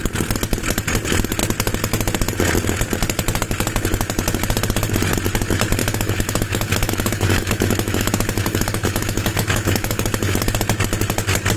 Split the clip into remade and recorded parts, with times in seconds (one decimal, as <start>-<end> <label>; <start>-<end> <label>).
0.0-5.8 recorded; 5.8-10.3 remade; 10.3-11.6 recorded